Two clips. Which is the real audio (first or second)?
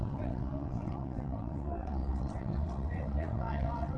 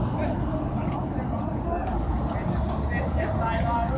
second